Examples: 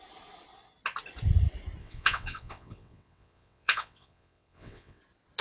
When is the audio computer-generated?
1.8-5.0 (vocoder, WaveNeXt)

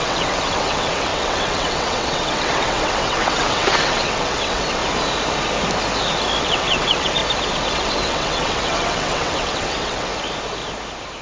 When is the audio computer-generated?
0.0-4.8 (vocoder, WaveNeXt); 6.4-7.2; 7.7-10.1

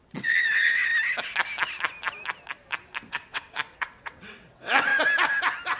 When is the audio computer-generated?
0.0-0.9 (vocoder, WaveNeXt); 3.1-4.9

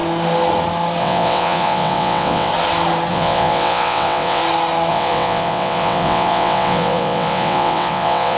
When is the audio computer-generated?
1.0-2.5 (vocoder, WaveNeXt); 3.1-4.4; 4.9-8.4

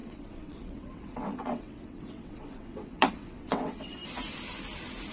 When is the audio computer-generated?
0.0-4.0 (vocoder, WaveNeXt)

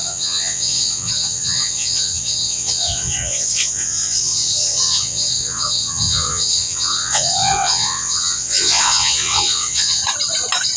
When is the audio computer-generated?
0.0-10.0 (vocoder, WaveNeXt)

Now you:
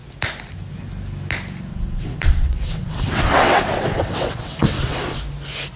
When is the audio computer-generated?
1.7-5.2 (vocoder, WaveNeXt)

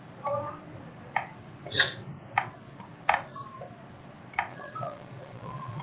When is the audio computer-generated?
4.5-5.8 (vocoder, WaveNeXt)